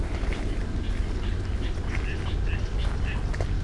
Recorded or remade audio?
recorded